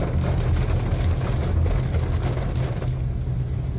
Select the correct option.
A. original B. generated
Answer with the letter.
A